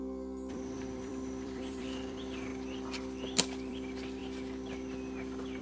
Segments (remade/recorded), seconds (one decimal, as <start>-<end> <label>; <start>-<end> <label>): 0.0-2.5 remade; 2.5-3.7 recorded; 3.7-4.2 remade; 4.2-5.6 recorded